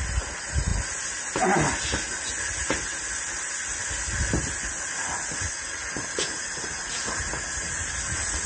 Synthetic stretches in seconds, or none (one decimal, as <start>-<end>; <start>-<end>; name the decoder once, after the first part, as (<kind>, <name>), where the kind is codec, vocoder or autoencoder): 4.6-6.9 (vocoder, Vocos)